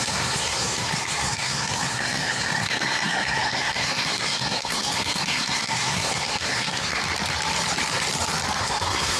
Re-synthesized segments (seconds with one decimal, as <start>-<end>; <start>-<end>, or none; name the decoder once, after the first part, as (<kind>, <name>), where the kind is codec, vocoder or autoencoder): 0.0-7.0 (codec, SNAC); 8.6-9.2